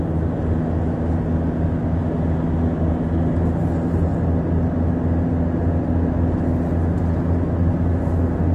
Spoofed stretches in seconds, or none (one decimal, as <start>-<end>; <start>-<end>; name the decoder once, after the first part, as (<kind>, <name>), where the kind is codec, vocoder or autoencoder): none